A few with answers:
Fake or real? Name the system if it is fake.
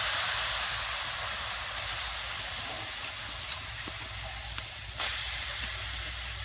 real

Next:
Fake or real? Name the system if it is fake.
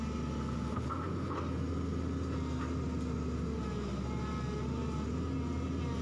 real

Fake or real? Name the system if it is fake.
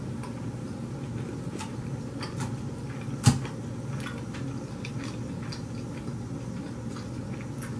real